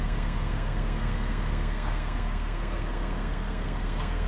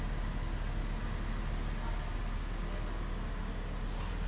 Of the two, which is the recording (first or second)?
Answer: second